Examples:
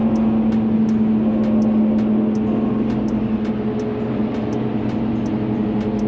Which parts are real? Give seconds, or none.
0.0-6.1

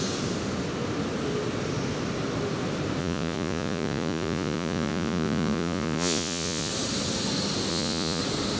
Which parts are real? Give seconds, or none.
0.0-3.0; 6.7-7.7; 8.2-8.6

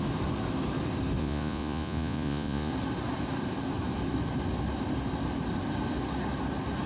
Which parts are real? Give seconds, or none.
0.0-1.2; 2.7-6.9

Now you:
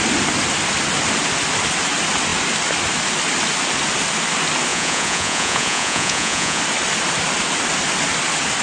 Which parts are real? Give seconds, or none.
0.0-4.7; 6.6-8.6

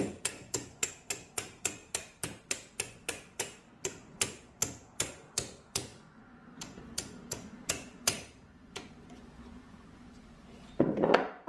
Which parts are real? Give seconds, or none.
1.8-2.4

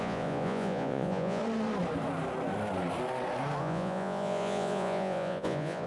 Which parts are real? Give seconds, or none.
1.4-3.6

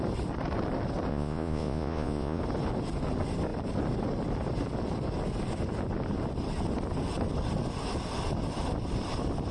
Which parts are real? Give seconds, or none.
0.0-1.1; 2.4-9.5